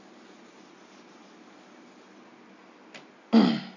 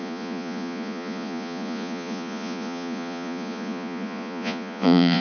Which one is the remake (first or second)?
second